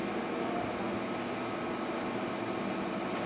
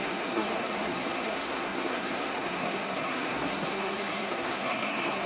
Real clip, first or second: first